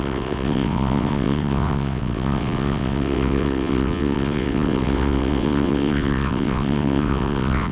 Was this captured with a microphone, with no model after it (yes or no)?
no